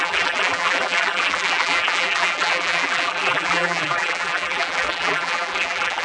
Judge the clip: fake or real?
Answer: fake